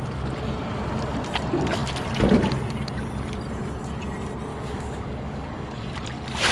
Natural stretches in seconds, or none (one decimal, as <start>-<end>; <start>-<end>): 0.0-4.5; 5.9-6.5